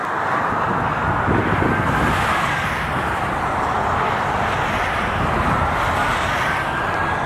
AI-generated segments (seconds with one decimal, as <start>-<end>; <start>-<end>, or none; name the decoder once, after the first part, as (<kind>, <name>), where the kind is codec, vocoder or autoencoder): none